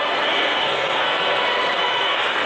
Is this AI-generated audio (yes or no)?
yes